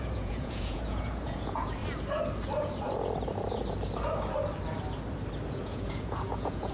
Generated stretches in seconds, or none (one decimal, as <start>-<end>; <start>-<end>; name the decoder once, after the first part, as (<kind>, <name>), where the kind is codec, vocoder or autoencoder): 0.0-1.8 (vocoder, Vocos); 5.5-6.7